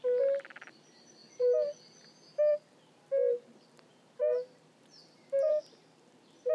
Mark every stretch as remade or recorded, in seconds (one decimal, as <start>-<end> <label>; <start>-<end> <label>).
0.0-1.2 remade; 1.2-2.5 recorded; 2.5-6.5 remade